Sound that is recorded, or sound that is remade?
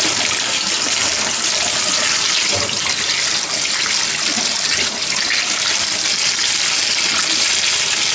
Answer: recorded